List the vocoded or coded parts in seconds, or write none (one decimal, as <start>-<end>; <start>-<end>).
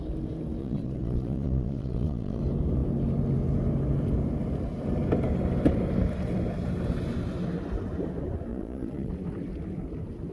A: 0.6-2.4; 8.5-9.1